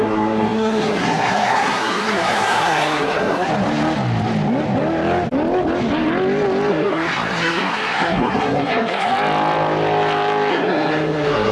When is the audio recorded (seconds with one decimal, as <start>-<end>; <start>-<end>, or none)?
3.5-6.7; 9.1-10.5